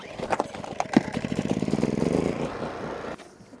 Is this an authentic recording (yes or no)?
yes